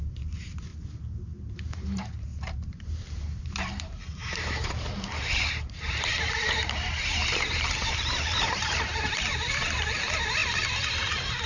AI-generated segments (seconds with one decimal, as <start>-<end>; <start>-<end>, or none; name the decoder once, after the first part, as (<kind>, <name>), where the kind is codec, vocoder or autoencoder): 0.0-0.7 (vocoder, BigVGAN v2); 1.5-11.5